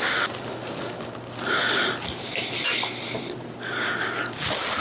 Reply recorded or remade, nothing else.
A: recorded